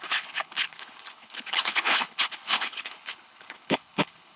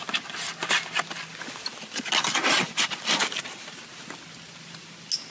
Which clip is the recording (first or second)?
second